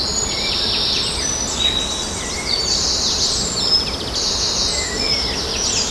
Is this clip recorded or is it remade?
recorded